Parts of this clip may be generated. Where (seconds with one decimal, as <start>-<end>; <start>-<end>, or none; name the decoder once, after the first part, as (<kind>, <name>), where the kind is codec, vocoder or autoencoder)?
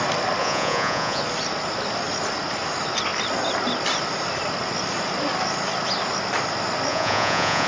0.4-1.2 (vocoder, Vocos); 6.9-7.7